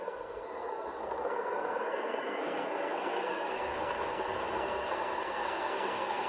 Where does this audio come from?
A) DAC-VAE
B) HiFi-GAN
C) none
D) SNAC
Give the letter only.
D